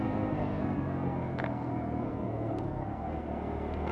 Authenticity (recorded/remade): remade